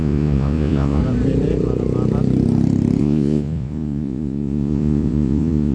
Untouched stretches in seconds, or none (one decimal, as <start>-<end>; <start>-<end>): 1.0-3.0